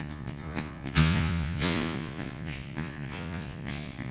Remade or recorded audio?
remade